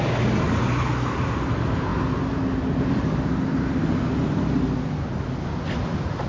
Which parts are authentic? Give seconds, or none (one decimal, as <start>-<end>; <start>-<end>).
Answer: 0.0-6.3